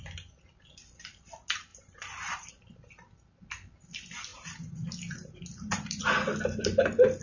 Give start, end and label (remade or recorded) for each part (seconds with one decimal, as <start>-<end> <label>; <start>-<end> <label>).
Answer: 0.0-1.7 recorded; 1.7-2.5 remade; 2.5-4.3 recorded; 4.3-6.0 remade; 6.0-7.2 recorded